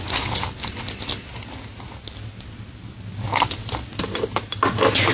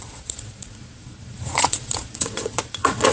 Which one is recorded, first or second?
first